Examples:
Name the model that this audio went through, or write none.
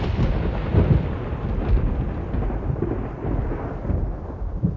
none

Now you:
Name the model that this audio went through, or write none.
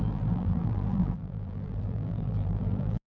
vocoder, BigVGAN v2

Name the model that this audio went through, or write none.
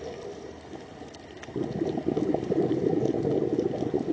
none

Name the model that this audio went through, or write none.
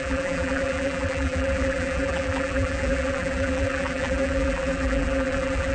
vocoder, BigVGAN v2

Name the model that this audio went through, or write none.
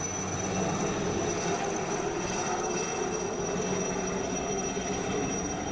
none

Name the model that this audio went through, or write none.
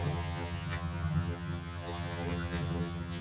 vocoder, HiFi-GAN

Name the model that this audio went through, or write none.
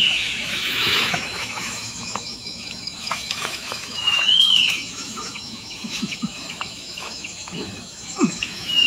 autoencoder, DAC-VAE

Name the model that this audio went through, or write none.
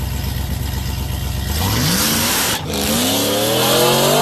none